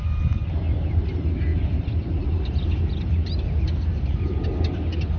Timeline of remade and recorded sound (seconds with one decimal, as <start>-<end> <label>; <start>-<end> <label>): 0.0-1.5 recorded; 1.5-2.4 remade; 2.4-5.2 recorded